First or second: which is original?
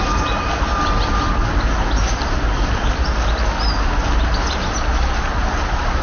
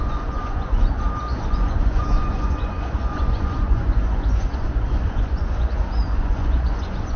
first